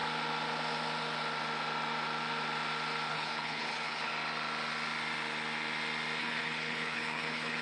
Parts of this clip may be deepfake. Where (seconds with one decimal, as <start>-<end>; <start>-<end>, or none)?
3.1-4.1; 6.2-7.6